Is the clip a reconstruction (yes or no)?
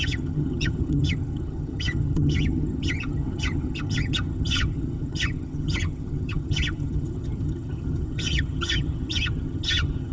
yes